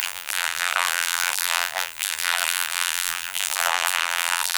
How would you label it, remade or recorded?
remade